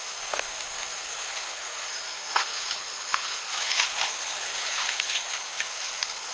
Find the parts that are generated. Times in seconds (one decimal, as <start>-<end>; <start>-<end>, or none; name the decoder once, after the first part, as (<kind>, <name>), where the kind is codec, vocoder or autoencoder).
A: 1.0-1.7 (codec, HILCodec); 2.5-6.3